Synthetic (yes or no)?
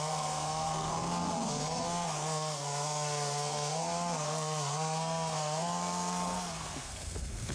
yes